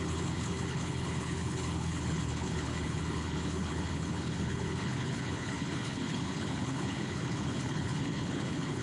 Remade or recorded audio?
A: remade